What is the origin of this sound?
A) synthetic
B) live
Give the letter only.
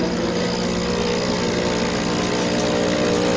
B